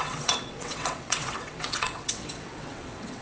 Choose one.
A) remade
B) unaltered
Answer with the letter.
A